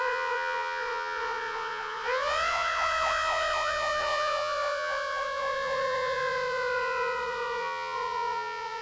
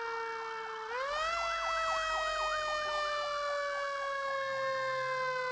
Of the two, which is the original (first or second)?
second